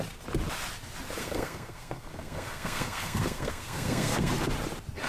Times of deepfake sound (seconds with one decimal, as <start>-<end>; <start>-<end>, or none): 1.2-4.3